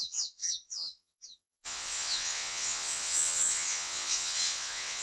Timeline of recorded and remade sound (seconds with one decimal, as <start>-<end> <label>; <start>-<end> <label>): 0.0-5.0 remade